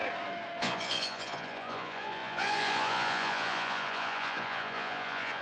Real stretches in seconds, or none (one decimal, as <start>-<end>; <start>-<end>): 0.0-0.6